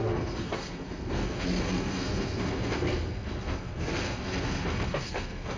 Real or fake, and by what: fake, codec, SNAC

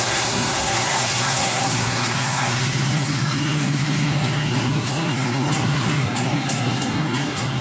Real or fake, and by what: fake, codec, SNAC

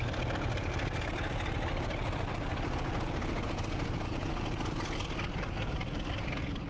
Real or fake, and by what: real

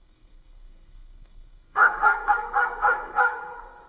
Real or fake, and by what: fake, codec, SNAC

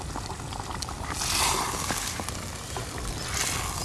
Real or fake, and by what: real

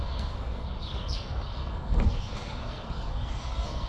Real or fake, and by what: fake, codec, SNAC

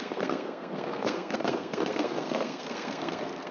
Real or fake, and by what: fake, codec, SNAC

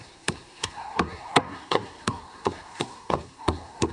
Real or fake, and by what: fake, codec, SNAC